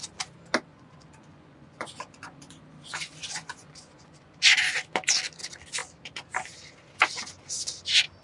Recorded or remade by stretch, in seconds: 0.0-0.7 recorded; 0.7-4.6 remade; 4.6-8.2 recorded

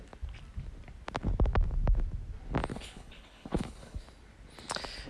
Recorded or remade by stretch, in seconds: 0.0-2.7 recorded; 2.7-4.0 remade; 4.0-5.1 recorded

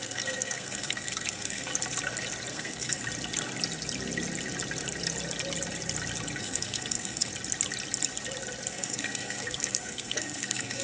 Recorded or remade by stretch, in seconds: 0.0-1.7 remade; 1.7-2.5 recorded; 2.5-3.0 remade; 3.0-6.4 recorded; 6.4-7.3 remade; 7.3-8.7 recorded; 8.7-10.8 remade

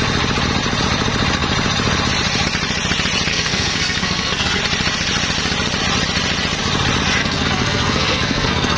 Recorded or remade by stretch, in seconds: 0.0-3.3 recorded; 3.3-4.6 remade; 4.6-7.2 recorded; 7.2-8.8 remade

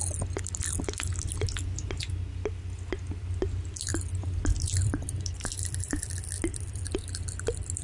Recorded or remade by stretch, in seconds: 0.0-3.1 recorded; 3.1-3.9 remade; 3.9-4.4 recorded; 4.4-7.8 remade

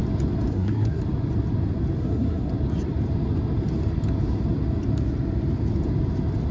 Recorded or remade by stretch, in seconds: 0.0-0.5 recorded; 0.5-1.0 remade; 1.0-2.0 recorded; 2.0-2.5 remade; 2.5-6.5 recorded

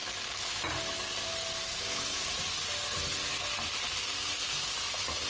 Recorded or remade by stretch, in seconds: 0.0-1.7 recorded; 1.7-2.3 remade; 2.3-5.3 recorded

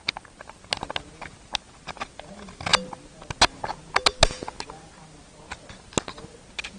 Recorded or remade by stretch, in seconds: 0.0-6.8 recorded